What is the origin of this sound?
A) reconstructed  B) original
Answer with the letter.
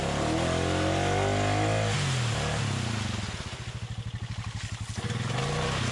B